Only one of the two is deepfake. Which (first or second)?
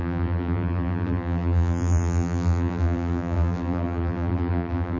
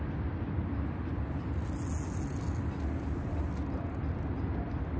first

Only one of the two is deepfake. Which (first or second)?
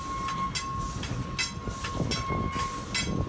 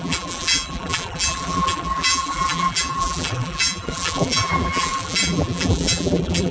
second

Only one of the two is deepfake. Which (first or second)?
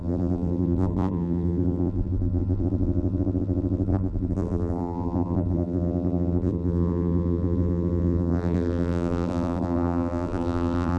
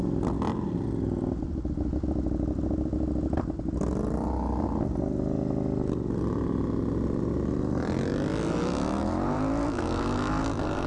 first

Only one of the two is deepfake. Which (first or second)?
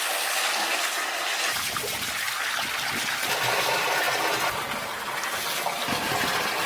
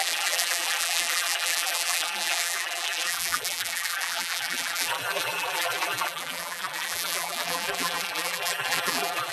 second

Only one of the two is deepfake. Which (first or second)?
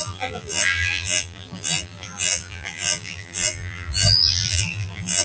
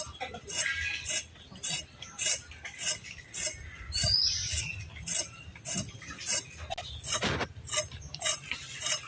first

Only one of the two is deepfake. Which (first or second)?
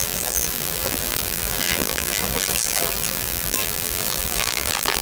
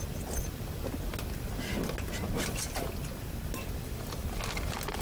first